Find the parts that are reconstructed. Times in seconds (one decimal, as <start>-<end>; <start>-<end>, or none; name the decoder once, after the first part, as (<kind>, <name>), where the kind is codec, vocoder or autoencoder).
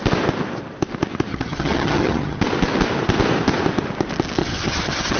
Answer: 1.3-2.4 (vocoder, HiFi-GAN); 4.4-5.2